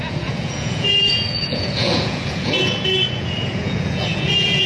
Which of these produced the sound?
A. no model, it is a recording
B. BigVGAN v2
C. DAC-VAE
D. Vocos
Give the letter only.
D